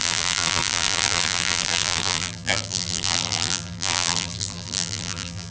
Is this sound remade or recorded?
remade